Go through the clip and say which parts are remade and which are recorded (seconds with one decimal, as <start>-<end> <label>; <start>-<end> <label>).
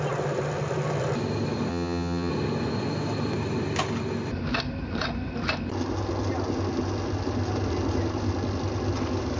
0.0-1.7 recorded; 1.7-2.3 remade; 2.3-9.4 recorded